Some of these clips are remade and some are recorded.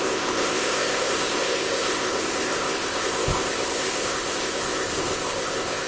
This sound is remade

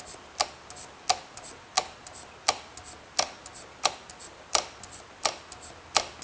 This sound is recorded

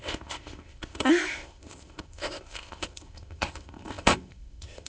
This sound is remade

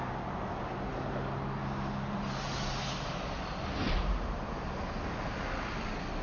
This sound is recorded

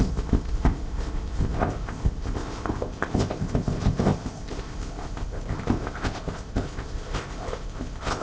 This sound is remade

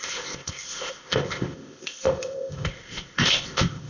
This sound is remade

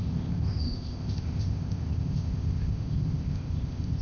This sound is remade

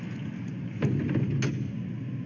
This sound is recorded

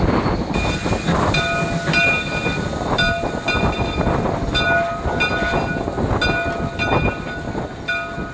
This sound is recorded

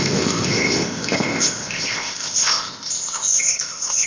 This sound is remade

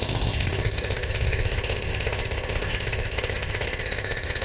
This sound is remade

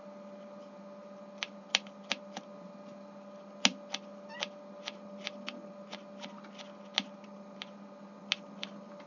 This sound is recorded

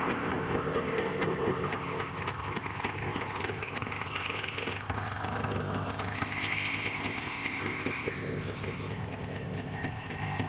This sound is remade